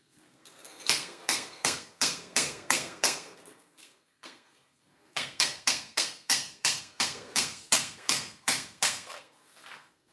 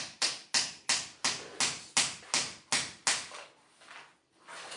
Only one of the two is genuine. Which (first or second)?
second